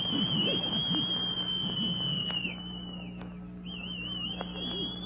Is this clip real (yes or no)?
yes